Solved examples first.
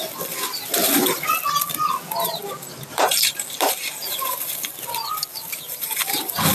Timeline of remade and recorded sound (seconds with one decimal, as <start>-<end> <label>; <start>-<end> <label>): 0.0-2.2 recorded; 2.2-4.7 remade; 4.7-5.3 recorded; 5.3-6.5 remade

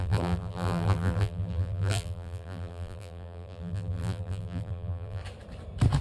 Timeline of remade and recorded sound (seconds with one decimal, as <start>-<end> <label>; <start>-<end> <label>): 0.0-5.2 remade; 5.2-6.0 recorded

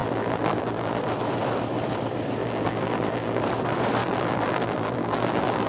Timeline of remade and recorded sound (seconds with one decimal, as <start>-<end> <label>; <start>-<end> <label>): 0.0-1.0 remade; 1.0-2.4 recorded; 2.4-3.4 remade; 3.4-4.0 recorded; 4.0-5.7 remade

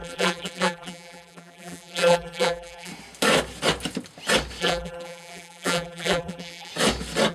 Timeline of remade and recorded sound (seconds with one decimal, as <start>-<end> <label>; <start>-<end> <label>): 0.0-2.9 remade; 2.9-4.6 recorded; 4.6-6.7 remade; 6.7-7.3 recorded

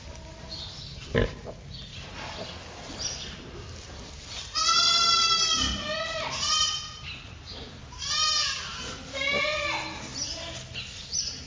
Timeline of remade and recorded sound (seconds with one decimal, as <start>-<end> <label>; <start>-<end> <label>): 0.0-11.5 recorded

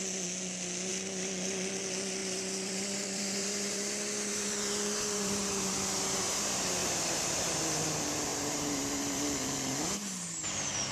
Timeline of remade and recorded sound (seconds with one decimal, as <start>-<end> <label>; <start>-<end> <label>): 0.0-2.2 recorded; 2.2-6.0 remade; 6.0-6.8 recorded; 6.8-7.6 remade; 7.6-8.3 recorded; 8.3-9.2 remade; 9.2-10.9 recorded